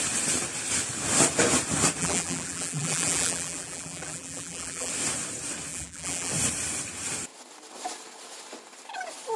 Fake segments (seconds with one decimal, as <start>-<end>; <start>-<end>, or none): 2.0-4.9; 5.7-6.3